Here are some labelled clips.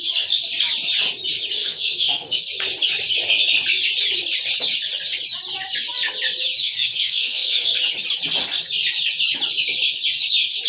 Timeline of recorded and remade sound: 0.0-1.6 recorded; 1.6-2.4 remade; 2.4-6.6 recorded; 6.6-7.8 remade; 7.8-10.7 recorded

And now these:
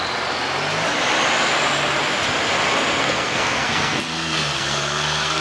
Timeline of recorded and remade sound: 0.0-3.0 recorded; 3.0-5.4 remade